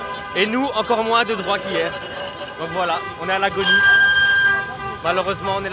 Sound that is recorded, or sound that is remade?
recorded